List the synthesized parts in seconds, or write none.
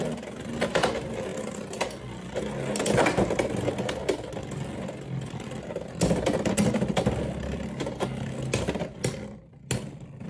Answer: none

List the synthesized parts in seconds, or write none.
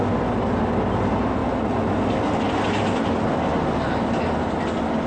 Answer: none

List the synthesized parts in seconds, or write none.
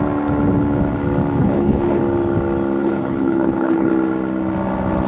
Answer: 1.4-2.0 (codec, HILCodec); 2.8-3.9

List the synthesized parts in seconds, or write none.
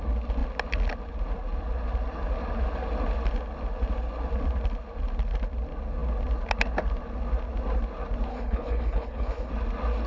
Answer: 8.3-9.5 (codec, HILCodec)